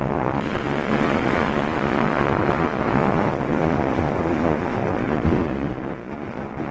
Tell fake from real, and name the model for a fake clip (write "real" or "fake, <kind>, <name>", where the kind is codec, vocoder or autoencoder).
fake, vocoder, Vocos